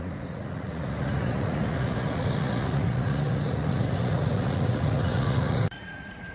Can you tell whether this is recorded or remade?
remade